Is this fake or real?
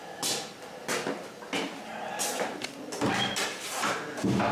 real